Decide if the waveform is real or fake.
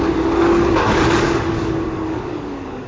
fake